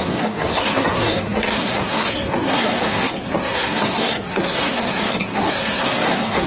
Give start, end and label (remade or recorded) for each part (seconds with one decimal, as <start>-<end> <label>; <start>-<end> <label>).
0.0-6.5 remade